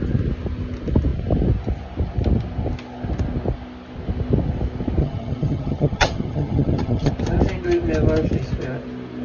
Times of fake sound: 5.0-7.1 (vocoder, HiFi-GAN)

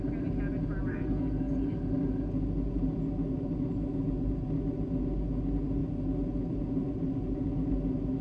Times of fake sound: 0.9-1.5 (codec, SNAC)

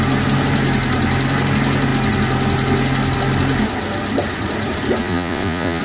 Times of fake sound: 5.0-5.8 (vocoder, Vocos)

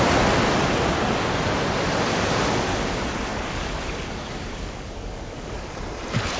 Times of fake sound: 3.3-5.7 (codec, DAC)

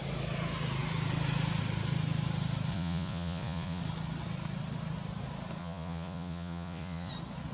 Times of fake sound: 2.7-3.8 (vocoder, Vocos); 5.6-7.1